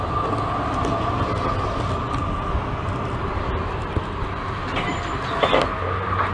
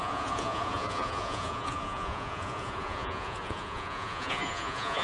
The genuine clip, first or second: first